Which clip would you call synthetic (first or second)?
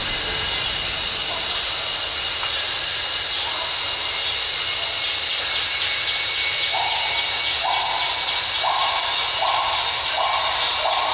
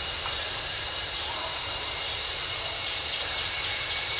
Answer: second